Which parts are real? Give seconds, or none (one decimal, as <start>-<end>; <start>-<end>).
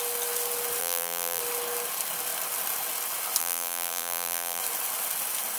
0.0-0.8; 1.4-3.4; 4.6-5.6